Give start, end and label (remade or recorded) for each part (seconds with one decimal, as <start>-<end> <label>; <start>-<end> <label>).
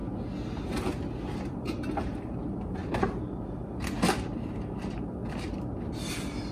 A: 0.0-1.4 recorded; 1.4-2.8 remade; 2.8-4.2 recorded; 4.2-5.2 remade; 5.2-6.1 recorded; 6.1-6.5 remade